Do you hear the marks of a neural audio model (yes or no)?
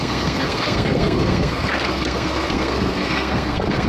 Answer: yes